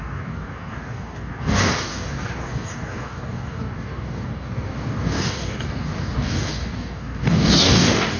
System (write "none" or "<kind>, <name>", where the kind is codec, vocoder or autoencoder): codec, DAC